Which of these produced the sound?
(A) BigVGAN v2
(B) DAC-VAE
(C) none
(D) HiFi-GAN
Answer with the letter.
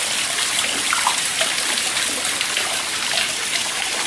A